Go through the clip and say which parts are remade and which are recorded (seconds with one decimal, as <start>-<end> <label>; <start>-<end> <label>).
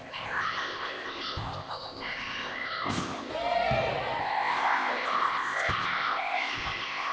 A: 0.0-3.3 remade; 3.3-4.2 recorded; 4.2-7.1 remade